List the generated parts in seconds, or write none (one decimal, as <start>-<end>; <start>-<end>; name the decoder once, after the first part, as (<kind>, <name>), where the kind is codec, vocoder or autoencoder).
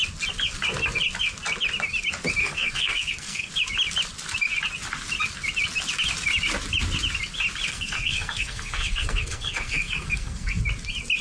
2.4-3.5 (codec, SNAC); 7.7-10.6